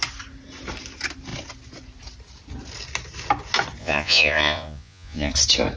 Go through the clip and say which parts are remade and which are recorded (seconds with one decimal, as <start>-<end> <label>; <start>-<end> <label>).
0.0-3.8 recorded; 3.8-5.3 remade; 5.3-5.8 recorded